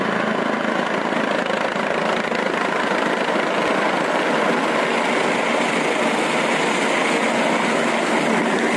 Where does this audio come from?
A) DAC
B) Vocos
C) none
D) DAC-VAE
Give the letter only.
C